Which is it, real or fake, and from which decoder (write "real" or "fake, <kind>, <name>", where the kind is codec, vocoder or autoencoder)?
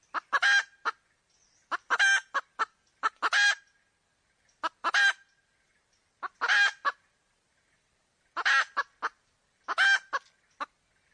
real